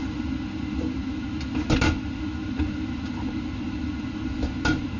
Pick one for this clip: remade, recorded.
recorded